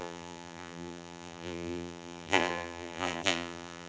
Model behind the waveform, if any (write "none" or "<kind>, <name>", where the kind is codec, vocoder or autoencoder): vocoder, BigVGAN v2